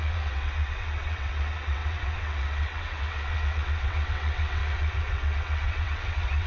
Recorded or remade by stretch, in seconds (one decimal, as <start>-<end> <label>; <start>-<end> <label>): 0.0-6.5 remade

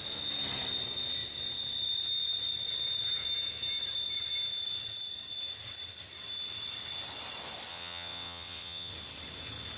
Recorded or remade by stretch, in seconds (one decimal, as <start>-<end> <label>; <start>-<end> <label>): 0.0-7.7 recorded; 7.7-8.9 remade; 8.9-9.8 recorded

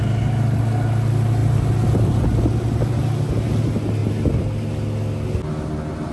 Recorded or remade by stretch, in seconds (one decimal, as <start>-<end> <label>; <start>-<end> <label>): 0.0-6.1 recorded

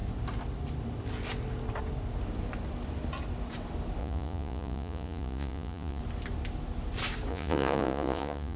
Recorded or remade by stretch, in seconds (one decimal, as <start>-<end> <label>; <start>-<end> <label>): 0.0-4.0 recorded; 4.0-6.0 remade; 6.0-7.3 recorded; 7.3-8.6 remade

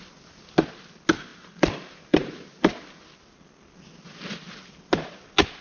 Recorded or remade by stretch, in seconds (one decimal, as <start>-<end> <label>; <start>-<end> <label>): 0.0-1.3 recorded; 1.3-3.0 remade; 3.0-5.6 recorded